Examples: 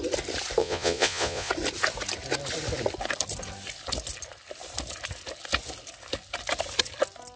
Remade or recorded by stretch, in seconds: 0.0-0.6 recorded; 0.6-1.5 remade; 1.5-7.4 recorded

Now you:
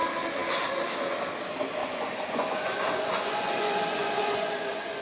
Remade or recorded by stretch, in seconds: 0.0-1.8 recorded; 1.8-5.0 remade

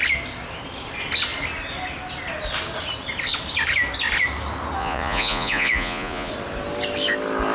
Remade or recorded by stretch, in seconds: 0.0-4.8 recorded; 4.8-6.3 remade; 6.3-7.5 recorded

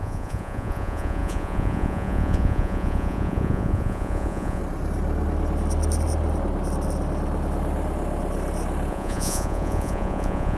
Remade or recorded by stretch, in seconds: 0.0-4.6 remade; 4.6-8.9 recorded; 8.9-10.6 remade

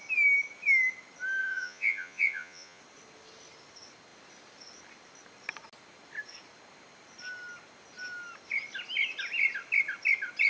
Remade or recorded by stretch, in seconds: 0.0-1.4 recorded; 1.4-2.8 remade; 2.8-10.5 recorded